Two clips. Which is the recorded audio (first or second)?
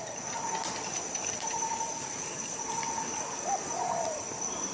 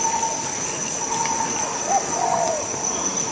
second